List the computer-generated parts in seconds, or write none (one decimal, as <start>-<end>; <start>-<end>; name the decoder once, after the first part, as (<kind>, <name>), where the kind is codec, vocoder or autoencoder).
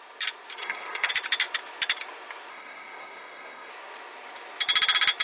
0.6-1.1 (codec, SNAC); 2.5-3.7